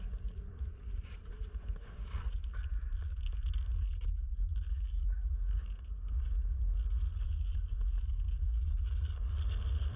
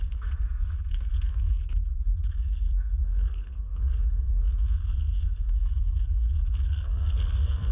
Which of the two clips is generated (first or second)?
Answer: second